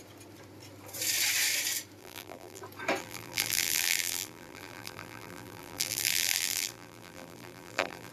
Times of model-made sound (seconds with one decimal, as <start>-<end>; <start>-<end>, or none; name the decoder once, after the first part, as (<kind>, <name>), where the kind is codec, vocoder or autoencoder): 2.0-2.6 (vocoder, BigVGAN v2); 3.0-8.1